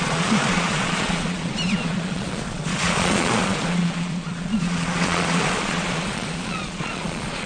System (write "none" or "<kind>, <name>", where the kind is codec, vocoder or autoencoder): vocoder, Vocos